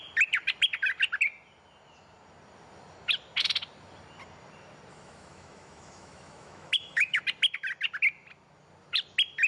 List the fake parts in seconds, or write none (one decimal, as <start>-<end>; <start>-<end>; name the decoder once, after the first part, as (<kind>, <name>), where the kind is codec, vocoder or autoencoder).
4.9-7.2 (autoencoder, DAC-VAE)